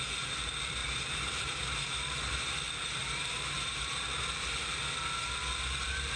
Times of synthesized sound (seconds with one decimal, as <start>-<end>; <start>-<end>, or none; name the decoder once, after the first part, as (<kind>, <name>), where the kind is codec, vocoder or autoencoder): 0.8-2.5 (vocoder, BigVGAN v2); 3.0-4.0